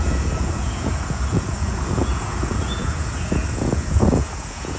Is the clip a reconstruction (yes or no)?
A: yes